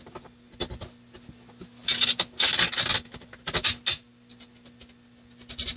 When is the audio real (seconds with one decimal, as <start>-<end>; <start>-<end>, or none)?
0.0-5.8